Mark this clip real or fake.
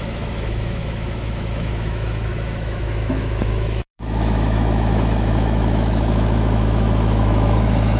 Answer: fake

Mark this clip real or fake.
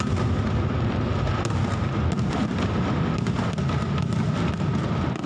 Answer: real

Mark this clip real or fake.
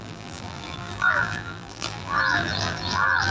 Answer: fake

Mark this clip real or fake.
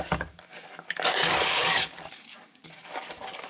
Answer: fake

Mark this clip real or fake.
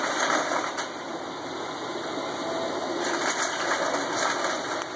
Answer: real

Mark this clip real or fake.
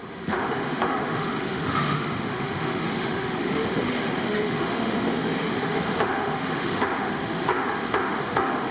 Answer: fake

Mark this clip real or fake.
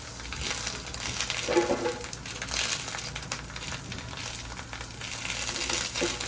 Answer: real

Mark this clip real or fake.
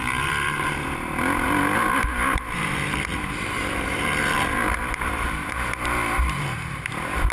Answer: fake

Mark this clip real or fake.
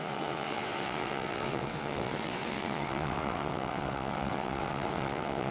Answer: fake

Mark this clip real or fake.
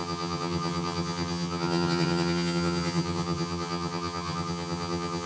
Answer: fake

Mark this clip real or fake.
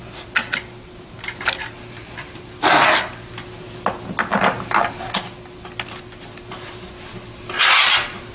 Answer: real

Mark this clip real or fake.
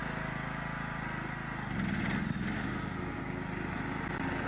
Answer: real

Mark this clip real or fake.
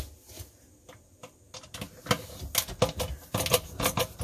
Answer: real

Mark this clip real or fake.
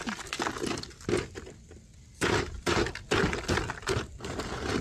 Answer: real